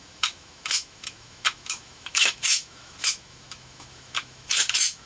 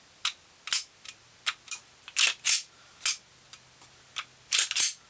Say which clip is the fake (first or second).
first